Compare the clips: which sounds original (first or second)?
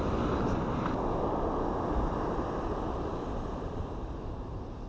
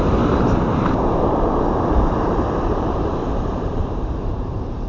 first